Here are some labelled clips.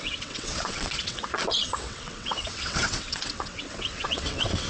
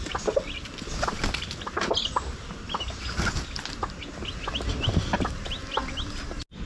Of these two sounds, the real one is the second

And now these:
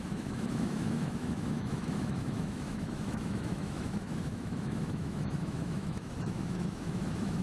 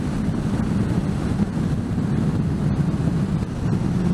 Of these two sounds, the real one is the second